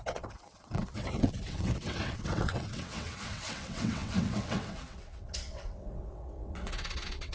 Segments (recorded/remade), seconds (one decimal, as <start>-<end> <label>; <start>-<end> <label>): 0.0-7.3 remade